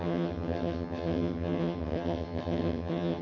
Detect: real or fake fake